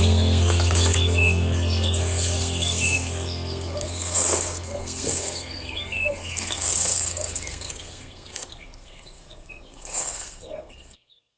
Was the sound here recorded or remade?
remade